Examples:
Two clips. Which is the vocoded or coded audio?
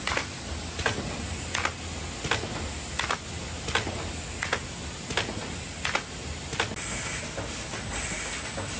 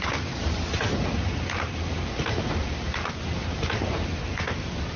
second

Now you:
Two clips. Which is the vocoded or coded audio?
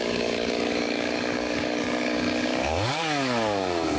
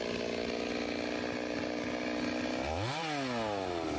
first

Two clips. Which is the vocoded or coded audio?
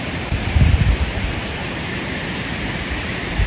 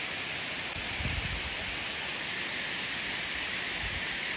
first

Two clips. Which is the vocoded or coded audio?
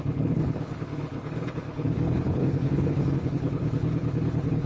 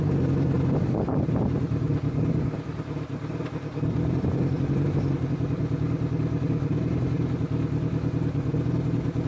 first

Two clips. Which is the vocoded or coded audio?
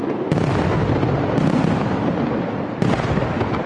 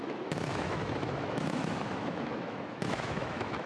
second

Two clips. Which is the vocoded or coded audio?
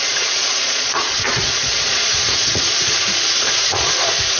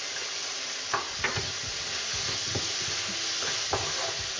first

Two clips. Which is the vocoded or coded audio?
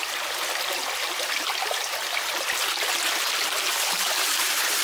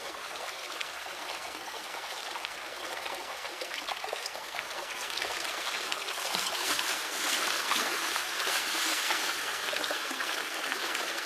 second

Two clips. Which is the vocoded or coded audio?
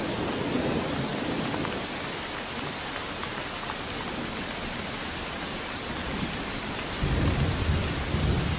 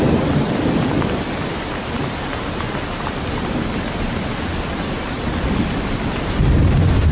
second